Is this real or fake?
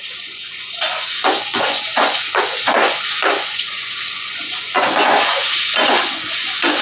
fake